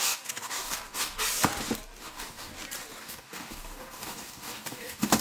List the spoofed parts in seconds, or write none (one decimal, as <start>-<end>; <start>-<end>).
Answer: 0.0-1.2; 2.0-2.5; 3.0-5.2